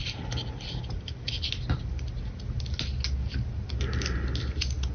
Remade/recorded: recorded